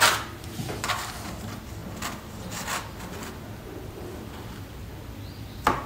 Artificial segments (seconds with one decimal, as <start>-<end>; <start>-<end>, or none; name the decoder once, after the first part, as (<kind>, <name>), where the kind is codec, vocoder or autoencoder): none